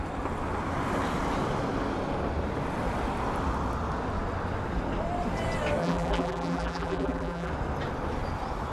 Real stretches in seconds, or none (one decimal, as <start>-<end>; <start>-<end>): 0.0-5.8; 7.5-8.7